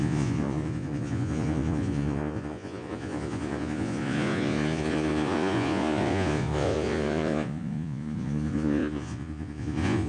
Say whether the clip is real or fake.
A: fake